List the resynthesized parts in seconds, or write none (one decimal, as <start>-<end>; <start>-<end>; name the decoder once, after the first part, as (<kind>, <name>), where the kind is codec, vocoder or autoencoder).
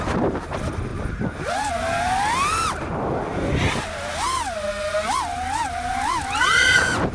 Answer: 5.3-5.9 (vocoder, BigVGAN v2)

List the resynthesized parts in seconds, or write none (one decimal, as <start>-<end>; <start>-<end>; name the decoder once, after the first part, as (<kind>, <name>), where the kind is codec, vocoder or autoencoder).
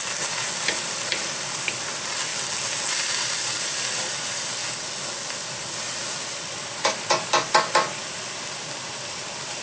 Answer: 0.0-2.3 (vocoder, BigVGAN v2); 2.9-4.6; 5.3-9.6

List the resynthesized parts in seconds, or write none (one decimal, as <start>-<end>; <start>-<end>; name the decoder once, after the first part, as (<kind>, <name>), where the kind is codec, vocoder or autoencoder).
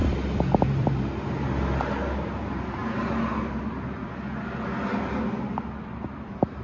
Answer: 0.0-1.8 (vocoder, BigVGAN v2)